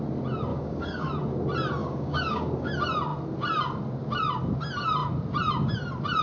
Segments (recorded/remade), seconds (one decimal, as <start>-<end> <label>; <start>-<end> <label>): 0.0-0.5 recorded; 0.5-1.1 remade; 1.1-1.8 recorded; 1.8-2.7 remade; 2.7-6.2 recorded